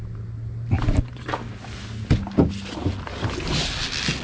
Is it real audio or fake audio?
real